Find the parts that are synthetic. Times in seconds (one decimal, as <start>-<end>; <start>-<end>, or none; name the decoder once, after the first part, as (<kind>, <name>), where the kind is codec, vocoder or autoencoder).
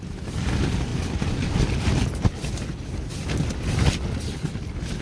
none